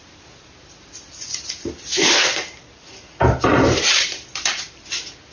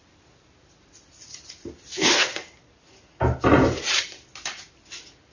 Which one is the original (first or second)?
second